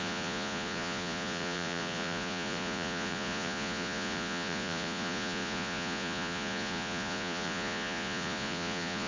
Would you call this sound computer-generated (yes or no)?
yes